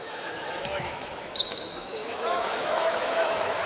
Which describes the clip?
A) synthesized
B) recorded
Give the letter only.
A